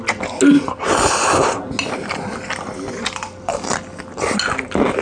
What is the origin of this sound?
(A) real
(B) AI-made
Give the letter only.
A